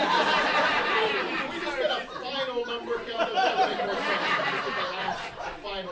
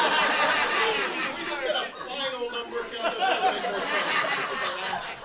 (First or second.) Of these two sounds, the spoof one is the first